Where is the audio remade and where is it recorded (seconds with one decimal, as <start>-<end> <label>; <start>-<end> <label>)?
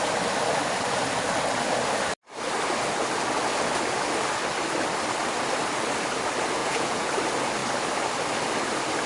0.0-6.6 recorded; 6.6-7.1 remade; 7.1-9.1 recorded